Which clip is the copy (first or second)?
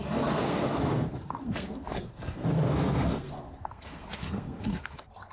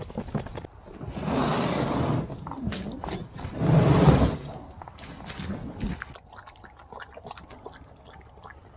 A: first